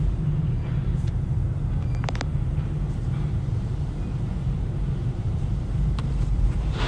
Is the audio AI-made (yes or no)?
yes